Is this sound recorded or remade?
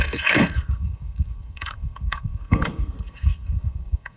remade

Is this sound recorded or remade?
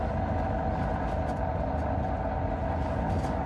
recorded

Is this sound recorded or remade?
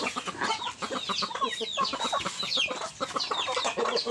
recorded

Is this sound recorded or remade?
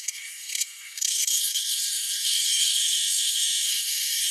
remade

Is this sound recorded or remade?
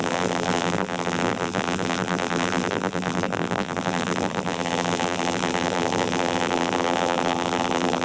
remade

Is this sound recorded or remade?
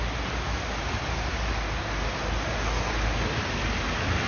recorded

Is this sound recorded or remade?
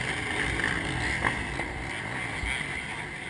recorded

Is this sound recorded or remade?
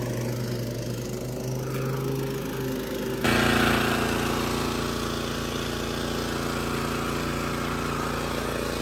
recorded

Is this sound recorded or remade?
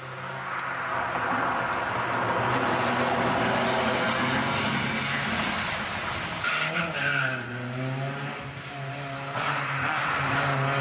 recorded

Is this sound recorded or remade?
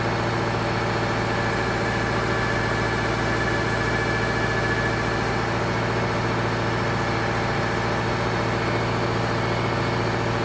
recorded